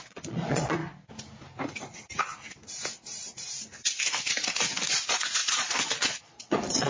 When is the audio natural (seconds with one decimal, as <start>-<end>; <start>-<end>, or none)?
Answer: 0.8-4.9